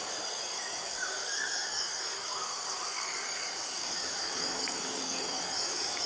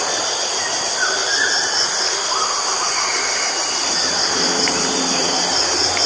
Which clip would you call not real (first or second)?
first